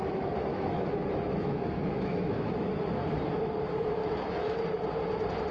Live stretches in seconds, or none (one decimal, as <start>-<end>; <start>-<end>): 0.0-0.5; 3.2-4.0; 4.6-5.5